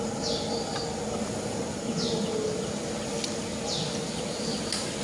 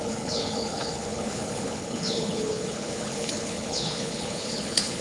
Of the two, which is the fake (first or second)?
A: second